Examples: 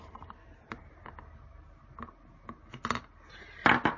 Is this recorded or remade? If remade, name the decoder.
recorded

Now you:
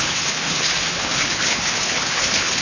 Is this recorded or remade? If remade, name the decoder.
remade, codec, HILCodec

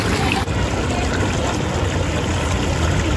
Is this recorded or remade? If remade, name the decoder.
recorded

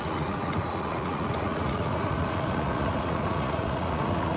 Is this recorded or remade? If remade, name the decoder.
remade, vocoder, Vocos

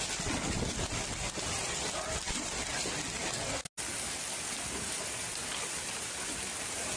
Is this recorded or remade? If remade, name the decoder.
recorded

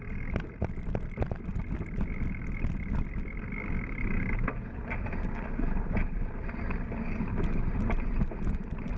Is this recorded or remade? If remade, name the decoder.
recorded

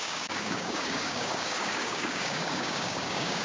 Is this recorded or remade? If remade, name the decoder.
remade, codec, DAC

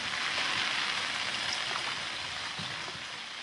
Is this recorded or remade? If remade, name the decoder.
recorded